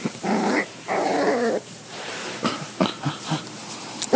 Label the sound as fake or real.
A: fake